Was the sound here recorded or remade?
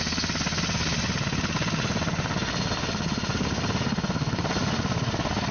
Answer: recorded